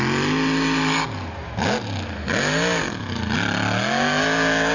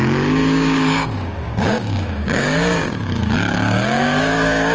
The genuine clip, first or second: first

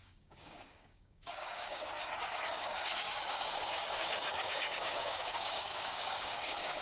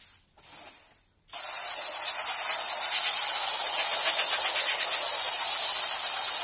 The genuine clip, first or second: second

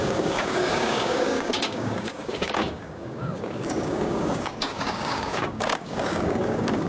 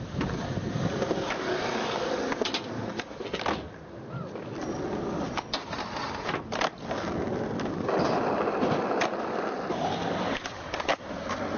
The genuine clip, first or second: second